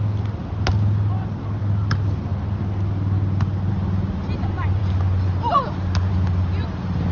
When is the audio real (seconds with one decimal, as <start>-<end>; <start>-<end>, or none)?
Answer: 0.0-7.1